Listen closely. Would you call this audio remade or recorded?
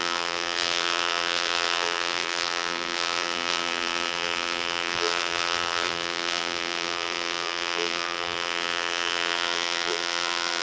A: remade